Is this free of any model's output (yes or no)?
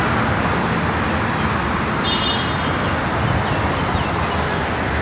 yes